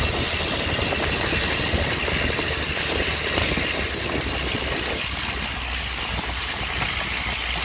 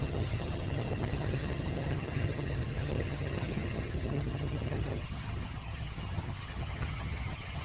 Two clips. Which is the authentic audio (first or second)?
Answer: first